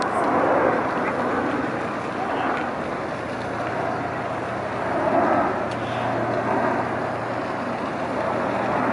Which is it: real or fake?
real